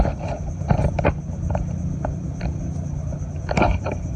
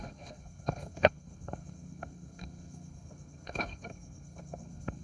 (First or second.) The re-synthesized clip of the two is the second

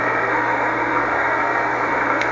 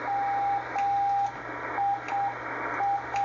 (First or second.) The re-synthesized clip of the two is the first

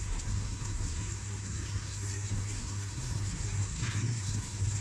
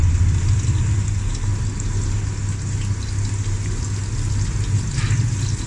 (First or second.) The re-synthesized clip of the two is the first